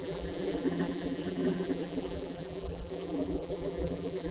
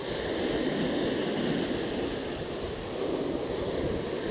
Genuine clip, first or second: second